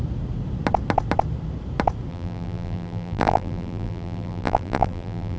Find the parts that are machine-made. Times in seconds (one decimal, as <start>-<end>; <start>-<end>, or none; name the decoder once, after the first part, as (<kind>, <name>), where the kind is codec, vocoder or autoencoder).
2.1-5.4 (vocoder, BigVGAN v2)